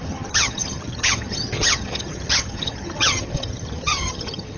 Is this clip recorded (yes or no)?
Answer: no